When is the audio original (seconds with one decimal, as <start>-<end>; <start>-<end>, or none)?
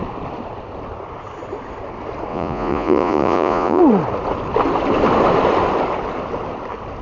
0.0-2.3; 3.8-7.0